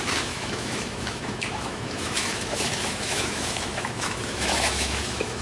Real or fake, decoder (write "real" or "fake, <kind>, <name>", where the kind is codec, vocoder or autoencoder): fake, autoencoder, DAC-VAE